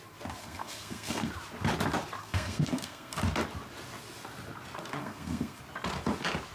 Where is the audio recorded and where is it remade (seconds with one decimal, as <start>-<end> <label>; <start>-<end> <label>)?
0.0-0.4 recorded; 0.4-1.3 remade; 1.3-2.2 recorded; 2.2-3.2 remade; 3.2-5.0 recorded; 5.0-5.6 remade; 5.6-6.5 recorded